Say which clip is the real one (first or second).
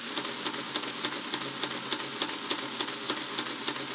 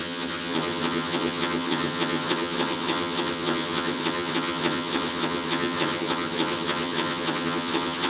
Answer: first